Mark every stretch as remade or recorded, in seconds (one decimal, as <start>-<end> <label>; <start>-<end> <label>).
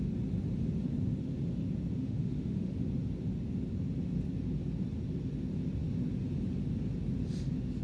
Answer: 0.0-2.0 recorded; 2.0-2.8 remade; 2.8-7.8 recorded